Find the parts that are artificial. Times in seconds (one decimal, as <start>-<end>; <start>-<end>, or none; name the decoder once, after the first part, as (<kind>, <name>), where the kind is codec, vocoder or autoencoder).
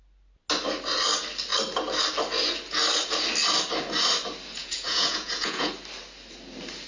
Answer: 4.6-5.7 (vocoder, Vocos)